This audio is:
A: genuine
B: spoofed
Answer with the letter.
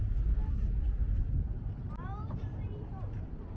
B